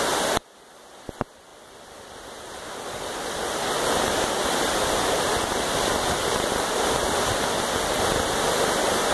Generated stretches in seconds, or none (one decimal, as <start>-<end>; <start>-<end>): none